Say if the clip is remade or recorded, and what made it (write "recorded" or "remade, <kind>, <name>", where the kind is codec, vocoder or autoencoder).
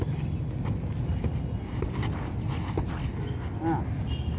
recorded